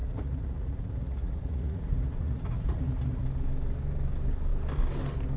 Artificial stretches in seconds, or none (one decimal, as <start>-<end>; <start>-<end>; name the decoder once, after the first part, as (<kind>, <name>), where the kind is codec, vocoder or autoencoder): 0.0-3.2 (vocoder, Vocos)